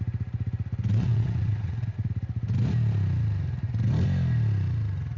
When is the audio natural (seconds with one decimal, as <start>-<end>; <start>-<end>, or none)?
0.0-0.9; 2.1-5.2